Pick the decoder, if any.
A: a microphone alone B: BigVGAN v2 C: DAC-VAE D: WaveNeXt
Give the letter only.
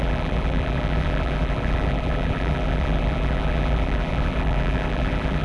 B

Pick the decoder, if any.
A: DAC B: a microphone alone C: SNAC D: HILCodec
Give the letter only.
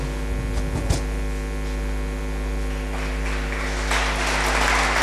B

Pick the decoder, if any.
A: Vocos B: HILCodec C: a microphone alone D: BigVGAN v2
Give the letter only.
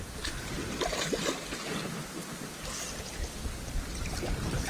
C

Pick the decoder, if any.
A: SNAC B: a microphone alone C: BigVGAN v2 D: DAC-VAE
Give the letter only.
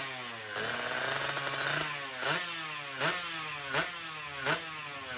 B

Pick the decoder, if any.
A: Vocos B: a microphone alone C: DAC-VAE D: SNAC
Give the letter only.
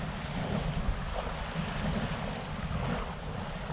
B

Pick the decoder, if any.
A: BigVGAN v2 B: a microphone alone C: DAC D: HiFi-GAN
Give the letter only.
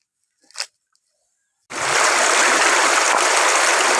A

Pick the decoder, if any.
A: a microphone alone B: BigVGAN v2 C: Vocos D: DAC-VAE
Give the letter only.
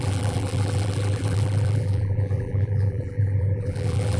B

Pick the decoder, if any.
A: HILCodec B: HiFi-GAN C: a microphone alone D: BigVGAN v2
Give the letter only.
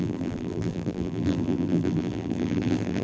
D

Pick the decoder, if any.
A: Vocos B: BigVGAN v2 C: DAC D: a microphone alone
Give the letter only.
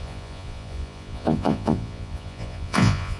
A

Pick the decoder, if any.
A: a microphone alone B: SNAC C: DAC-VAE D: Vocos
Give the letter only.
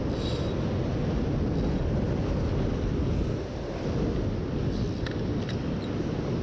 A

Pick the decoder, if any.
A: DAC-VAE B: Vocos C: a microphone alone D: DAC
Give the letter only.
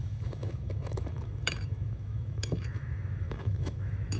A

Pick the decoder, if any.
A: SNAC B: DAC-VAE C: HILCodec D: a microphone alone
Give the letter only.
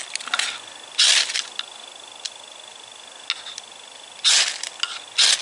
D